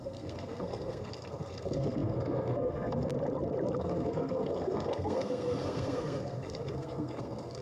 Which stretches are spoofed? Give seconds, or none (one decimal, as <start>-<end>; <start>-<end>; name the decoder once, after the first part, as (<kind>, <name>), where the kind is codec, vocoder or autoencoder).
0.0-3.1 (codec, SNAC); 3.8-7.6